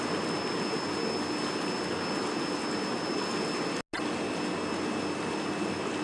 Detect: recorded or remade recorded